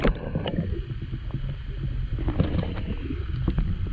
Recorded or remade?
recorded